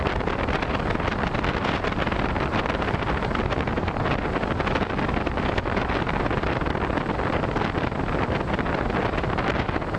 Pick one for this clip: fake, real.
real